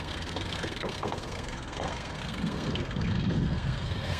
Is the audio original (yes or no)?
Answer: no